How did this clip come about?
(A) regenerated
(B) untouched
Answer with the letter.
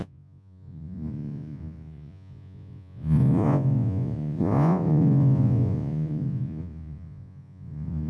A